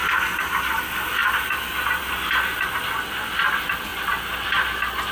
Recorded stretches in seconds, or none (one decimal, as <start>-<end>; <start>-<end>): 0.0-1.2; 2.7-5.1